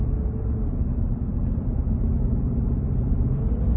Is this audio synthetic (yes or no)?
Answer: no